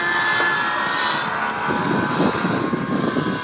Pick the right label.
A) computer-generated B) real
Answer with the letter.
B